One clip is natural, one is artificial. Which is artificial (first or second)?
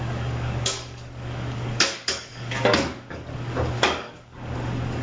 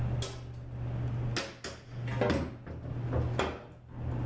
first